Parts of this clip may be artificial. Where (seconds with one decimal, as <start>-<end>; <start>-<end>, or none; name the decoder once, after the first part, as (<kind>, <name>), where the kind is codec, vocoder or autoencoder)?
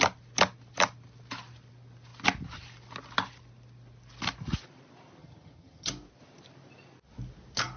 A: 5.2-5.9 (vocoder, HiFi-GAN)